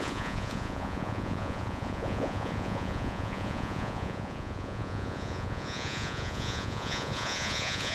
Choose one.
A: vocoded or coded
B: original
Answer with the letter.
A